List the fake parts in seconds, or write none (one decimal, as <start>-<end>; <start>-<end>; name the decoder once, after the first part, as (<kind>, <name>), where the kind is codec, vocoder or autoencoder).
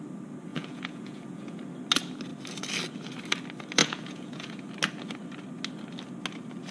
0.5-1.6 (vocoder, Vocos); 3.8-4.7